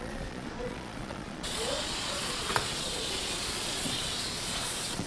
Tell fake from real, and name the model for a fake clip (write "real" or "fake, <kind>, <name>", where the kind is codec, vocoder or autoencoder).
fake, vocoder, Vocos